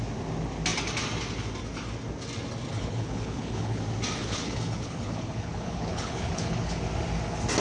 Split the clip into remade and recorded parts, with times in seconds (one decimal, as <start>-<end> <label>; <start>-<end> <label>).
0.0-2.7 recorded; 2.7-3.8 remade; 3.8-4.2 recorded; 4.2-6.8 remade; 6.8-7.6 recorded